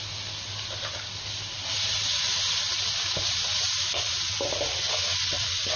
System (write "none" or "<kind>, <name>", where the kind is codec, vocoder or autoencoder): none